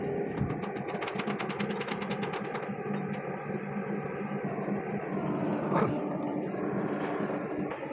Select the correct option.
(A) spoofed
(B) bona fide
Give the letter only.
B